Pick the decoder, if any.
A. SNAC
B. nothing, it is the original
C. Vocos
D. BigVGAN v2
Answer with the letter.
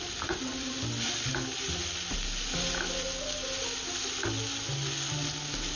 B